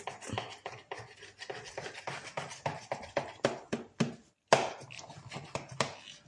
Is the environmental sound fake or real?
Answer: real